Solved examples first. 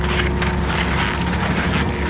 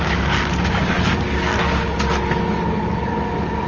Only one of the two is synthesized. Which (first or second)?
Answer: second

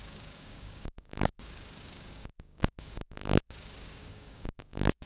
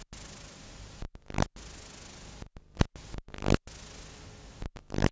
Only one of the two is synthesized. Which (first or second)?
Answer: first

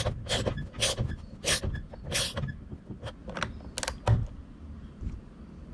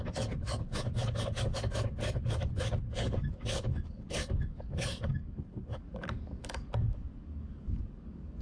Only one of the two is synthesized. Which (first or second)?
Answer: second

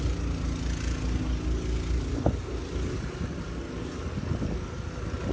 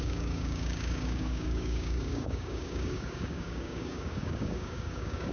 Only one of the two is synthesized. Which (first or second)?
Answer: second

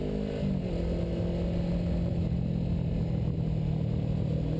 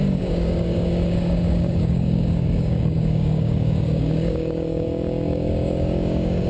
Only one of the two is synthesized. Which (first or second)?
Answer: second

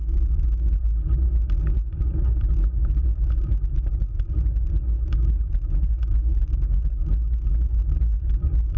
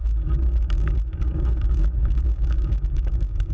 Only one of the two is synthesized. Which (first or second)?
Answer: second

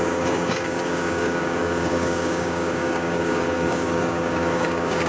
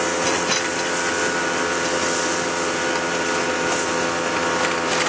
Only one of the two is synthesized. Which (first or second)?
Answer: first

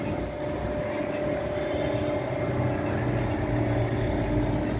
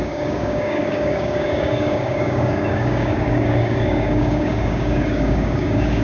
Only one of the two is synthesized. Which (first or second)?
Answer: second